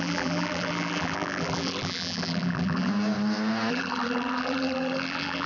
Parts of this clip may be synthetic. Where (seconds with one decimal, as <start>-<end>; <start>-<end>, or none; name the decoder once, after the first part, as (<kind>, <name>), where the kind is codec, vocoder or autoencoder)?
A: 0.0-2.9 (vocoder, BigVGAN v2); 3.7-5.5